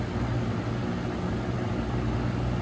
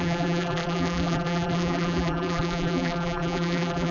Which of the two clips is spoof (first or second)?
second